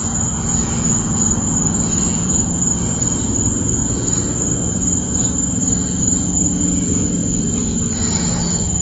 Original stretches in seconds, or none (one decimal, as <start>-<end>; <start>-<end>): 2.7-8.8